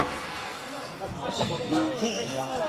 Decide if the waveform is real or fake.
fake